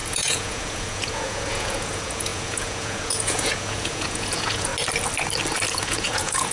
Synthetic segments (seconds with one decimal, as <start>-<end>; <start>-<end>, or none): 0.0-4.7; 5.7-6.5